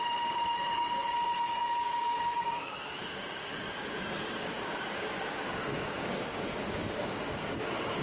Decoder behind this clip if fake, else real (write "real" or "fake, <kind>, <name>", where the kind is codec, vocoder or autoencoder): fake, codec, DAC